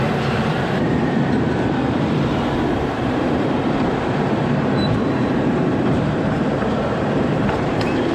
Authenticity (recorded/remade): remade